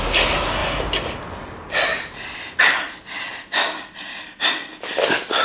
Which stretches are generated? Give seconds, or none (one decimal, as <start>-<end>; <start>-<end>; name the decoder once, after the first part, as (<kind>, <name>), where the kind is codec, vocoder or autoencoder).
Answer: none